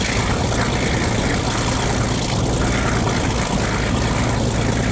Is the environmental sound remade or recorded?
recorded